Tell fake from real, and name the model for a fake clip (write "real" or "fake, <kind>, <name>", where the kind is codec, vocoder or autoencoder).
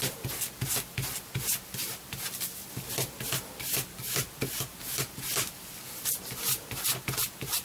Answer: real